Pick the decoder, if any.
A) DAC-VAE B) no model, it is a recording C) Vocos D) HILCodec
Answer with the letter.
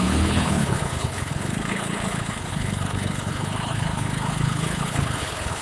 D